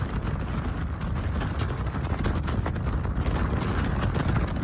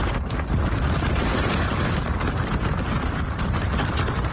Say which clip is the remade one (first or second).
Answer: second